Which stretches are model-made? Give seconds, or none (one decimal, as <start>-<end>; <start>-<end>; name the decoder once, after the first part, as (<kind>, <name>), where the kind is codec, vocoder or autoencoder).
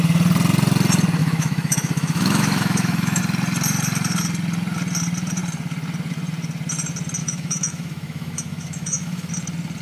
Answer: 1.2-3.2 (autoencoder, DAC-VAE); 7.2-9.3